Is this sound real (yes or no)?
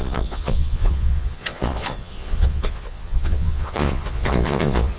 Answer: no